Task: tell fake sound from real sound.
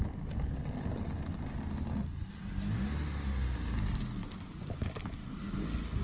real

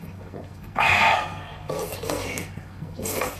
fake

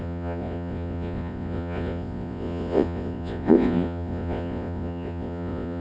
fake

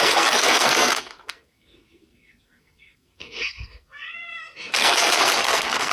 fake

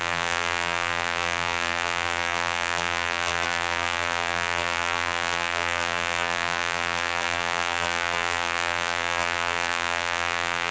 fake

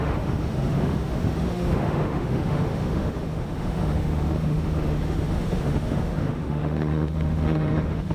fake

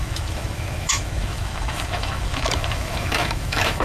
fake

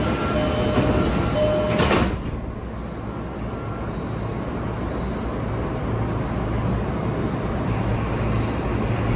real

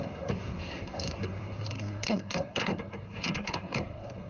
fake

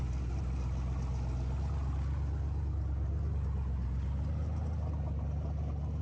real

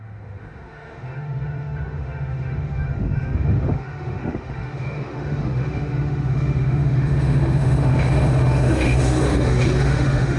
fake